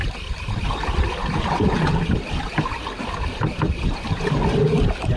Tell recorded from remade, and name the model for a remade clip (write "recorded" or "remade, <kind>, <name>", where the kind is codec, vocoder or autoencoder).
recorded